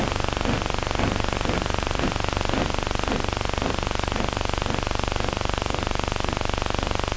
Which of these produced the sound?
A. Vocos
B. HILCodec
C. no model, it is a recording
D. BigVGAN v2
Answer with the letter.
C